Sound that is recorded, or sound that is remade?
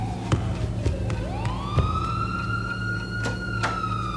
recorded